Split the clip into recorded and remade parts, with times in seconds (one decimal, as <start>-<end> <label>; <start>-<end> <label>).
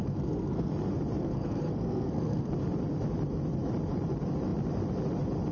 0.0-0.7 remade; 0.7-1.2 recorded; 1.2-2.5 remade; 2.5-5.5 recorded